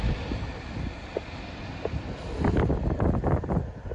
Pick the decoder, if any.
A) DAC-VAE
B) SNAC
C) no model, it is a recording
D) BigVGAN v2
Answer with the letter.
C